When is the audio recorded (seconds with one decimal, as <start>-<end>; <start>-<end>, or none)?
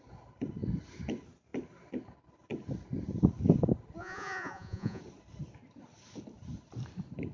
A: 0.0-4.0; 5.0-7.3